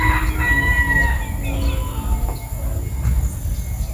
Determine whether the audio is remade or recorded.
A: recorded